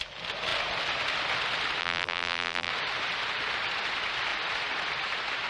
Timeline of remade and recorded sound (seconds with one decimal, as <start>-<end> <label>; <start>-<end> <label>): 0.0-1.8 recorded; 1.8-2.7 remade; 2.7-5.5 recorded